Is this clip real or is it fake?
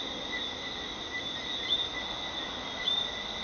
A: real